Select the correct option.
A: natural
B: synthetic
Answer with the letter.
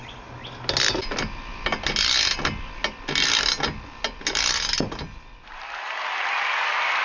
A